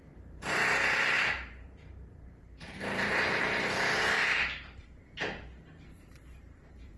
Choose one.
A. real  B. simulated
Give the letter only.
B